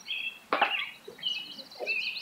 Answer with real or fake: real